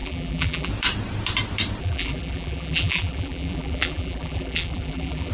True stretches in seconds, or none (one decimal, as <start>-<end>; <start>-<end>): 0.7-1.8